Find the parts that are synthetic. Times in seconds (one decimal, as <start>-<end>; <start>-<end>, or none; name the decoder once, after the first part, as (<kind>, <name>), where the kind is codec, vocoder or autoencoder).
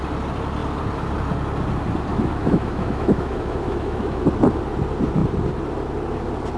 2.1-4.2 (autoencoder, DAC-VAE)